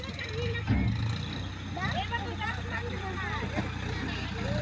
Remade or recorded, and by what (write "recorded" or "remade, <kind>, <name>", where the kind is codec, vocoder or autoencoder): recorded